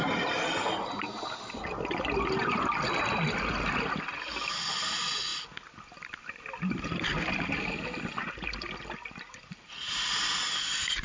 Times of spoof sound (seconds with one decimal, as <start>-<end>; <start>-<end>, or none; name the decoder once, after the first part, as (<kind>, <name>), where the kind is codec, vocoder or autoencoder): none